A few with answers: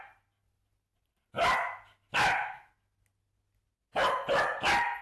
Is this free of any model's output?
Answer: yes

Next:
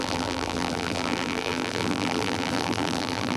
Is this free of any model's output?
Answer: no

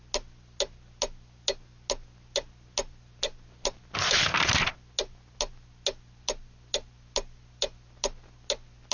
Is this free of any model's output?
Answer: yes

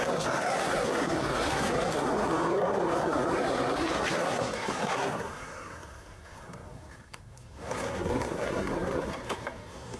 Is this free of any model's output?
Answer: no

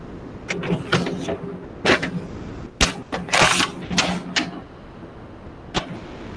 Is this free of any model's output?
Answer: yes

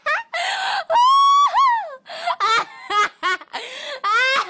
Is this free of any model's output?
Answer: yes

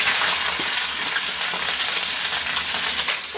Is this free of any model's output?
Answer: yes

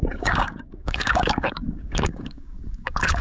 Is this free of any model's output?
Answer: no